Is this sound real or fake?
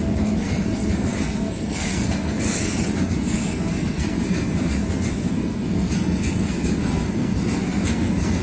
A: fake